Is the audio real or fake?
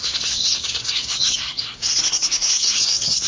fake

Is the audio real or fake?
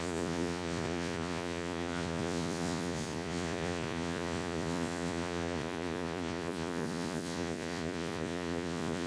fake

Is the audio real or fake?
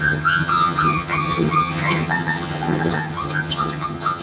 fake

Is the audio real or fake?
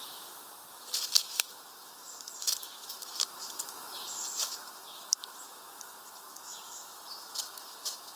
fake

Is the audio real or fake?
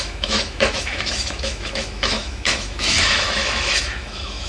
fake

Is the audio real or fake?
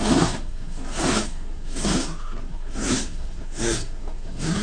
fake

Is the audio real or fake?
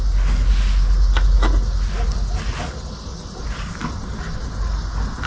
real